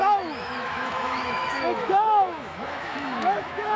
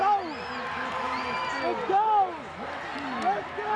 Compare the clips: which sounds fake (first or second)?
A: first